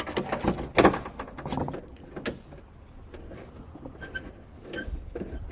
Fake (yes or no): no